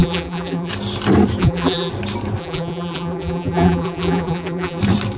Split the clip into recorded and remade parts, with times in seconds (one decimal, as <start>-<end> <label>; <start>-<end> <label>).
0.0-0.7 remade; 0.7-1.4 recorded; 1.4-1.9 remade; 1.9-2.4 recorded; 2.4-4.8 remade; 4.8-5.2 recorded